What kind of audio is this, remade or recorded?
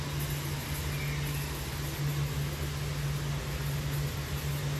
recorded